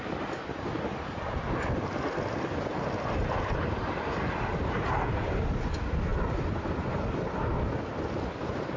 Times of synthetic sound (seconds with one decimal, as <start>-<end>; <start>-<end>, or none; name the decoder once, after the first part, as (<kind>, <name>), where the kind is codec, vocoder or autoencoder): none